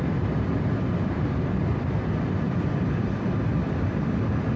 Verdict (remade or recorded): remade